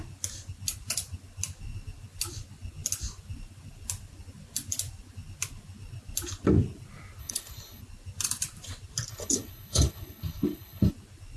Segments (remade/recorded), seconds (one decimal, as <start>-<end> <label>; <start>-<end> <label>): 0.0-7.2 recorded; 7.2-7.8 remade; 7.8-9.1 recorded; 9.1-10.9 remade; 10.9-11.4 recorded

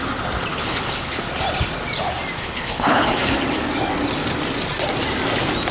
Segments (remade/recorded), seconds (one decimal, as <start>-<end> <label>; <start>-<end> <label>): 0.0-0.5 recorded; 0.5-1.2 remade; 1.2-2.4 recorded; 2.4-3.4 remade; 3.4-5.7 recorded